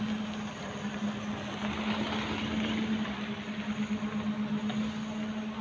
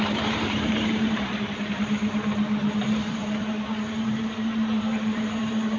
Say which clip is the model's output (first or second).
second